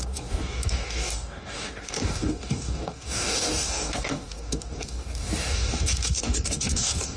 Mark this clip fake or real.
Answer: fake